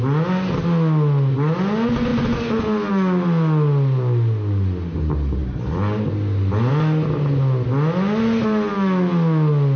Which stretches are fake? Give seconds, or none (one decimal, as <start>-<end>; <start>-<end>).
none